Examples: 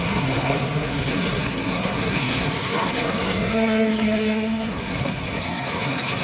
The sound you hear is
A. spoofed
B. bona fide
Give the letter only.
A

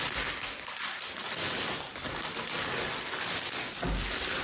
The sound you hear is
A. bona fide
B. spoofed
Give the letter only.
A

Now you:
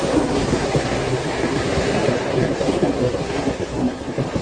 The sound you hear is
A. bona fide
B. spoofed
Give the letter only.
B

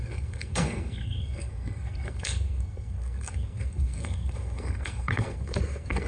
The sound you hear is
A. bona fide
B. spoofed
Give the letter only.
B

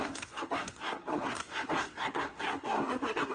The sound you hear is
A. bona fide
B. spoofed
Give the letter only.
B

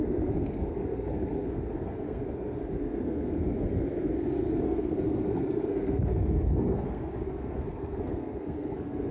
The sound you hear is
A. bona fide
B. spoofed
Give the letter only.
B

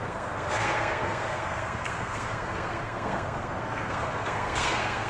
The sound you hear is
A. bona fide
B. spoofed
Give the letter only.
B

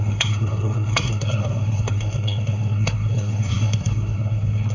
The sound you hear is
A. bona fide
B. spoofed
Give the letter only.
B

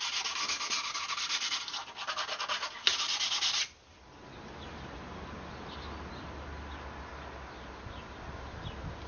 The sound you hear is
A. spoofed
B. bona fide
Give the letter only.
B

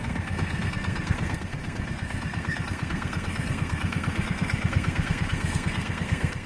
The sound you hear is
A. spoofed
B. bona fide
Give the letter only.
A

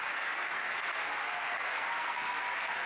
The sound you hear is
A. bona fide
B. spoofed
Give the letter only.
B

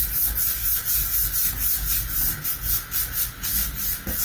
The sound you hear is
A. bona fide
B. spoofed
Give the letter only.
A